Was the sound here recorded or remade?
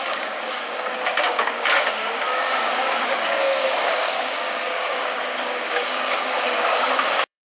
remade